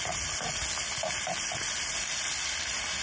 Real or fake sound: real